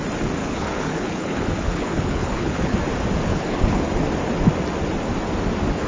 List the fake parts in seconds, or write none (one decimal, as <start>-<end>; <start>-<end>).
0.4-2.8; 3.3-3.8